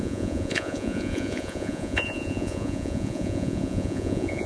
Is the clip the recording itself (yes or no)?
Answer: no